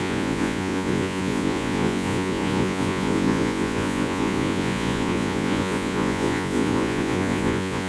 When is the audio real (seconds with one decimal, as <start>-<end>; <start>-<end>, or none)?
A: none